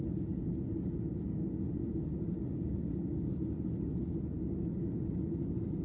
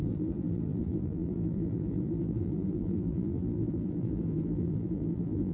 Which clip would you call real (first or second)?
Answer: first